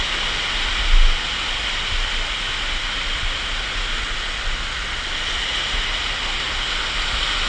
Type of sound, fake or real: real